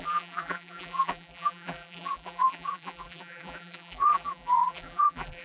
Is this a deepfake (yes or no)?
yes